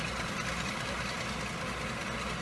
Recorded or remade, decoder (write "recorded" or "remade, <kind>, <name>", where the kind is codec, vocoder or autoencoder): recorded